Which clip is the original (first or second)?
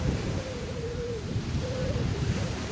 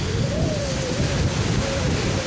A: second